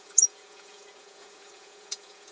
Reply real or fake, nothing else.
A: fake